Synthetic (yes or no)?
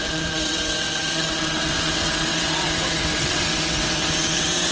yes